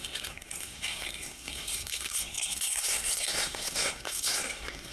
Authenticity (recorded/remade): remade